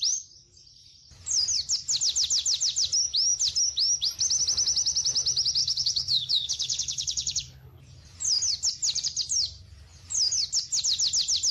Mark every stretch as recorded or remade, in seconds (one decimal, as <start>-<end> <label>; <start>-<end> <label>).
0.0-5.6 recorded; 5.6-7.8 remade; 7.8-11.5 recorded

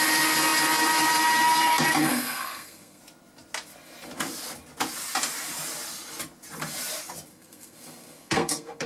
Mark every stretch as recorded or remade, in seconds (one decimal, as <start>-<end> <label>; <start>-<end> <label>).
0.0-2.0 recorded; 2.0-3.0 remade; 3.0-7.3 recorded; 7.3-8.9 remade

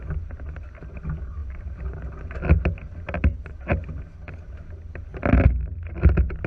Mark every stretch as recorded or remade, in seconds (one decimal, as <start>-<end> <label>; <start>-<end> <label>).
0.0-6.5 recorded

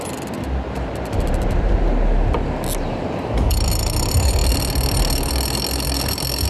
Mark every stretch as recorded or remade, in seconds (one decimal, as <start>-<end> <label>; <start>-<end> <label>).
0.0-6.5 recorded